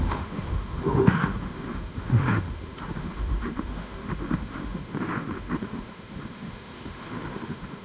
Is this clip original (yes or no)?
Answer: no